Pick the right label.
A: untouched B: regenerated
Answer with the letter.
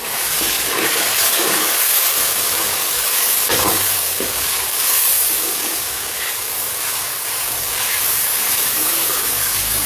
B